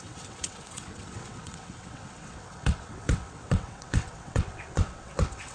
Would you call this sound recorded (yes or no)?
no